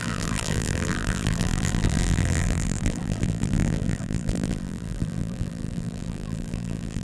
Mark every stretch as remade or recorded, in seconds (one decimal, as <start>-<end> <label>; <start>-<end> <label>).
0.0-7.0 remade